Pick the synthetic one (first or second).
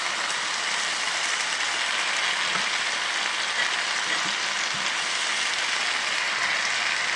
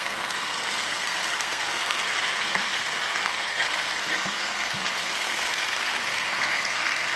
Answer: second